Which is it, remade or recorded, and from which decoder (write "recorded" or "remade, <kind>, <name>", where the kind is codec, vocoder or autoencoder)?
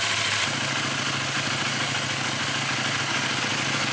recorded